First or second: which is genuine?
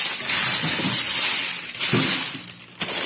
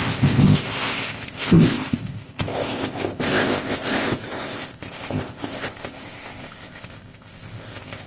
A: first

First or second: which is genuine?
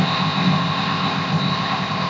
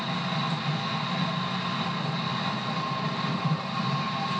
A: second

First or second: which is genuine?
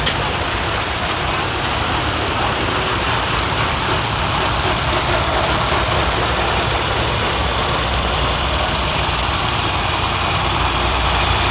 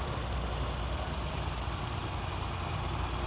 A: second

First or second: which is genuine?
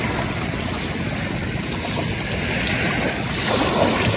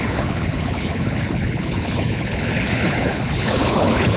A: first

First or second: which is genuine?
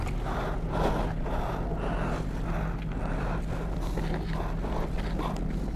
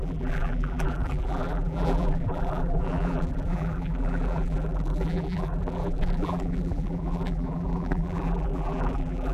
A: first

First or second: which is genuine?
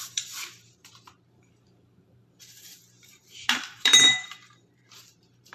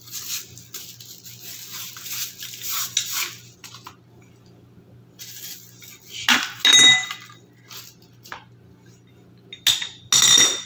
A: second